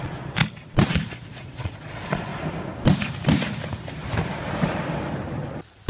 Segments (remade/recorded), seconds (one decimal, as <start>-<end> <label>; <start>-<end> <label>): 0.0-0.4 remade; 0.4-0.9 recorded; 0.9-2.3 remade; 2.3-5.9 recorded